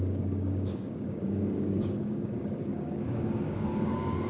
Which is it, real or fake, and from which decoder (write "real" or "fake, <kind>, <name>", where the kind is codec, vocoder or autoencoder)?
fake, codec, DAC